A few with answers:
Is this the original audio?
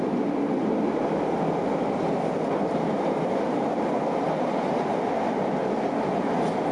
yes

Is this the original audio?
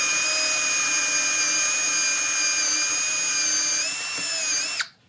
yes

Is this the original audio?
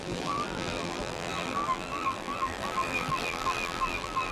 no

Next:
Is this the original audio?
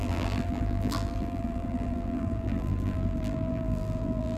no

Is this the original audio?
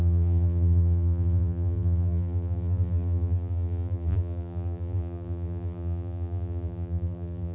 no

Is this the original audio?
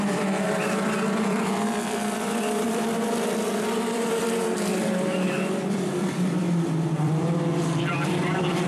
no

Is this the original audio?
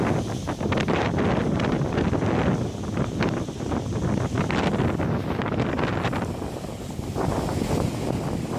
yes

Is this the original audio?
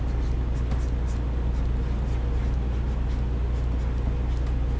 yes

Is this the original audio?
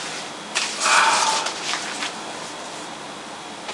yes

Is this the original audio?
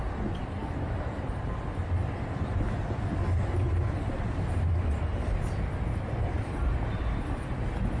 no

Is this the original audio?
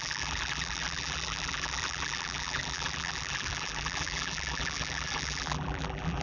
no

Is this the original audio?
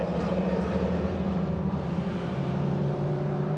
no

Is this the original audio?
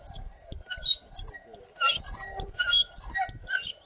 yes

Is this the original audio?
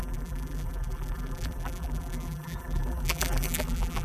no